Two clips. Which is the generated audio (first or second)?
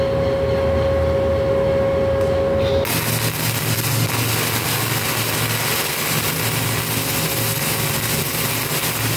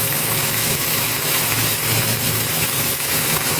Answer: second